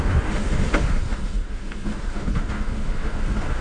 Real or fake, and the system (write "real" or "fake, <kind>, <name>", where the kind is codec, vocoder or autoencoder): fake, autoencoder, DAC-VAE